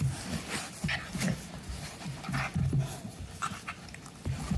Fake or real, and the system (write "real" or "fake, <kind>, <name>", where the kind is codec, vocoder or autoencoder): real